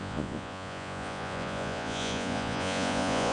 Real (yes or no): no